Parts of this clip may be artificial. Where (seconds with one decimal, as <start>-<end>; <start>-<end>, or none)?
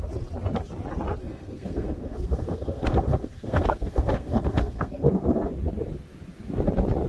1.2-5.5